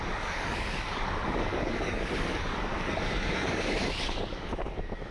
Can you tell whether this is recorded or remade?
remade